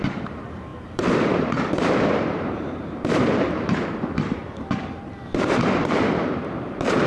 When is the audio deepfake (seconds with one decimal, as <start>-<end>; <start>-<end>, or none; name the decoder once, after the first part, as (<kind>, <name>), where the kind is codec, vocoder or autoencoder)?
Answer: 0.0-4.4 (vocoder, BigVGAN v2); 6.1-7.1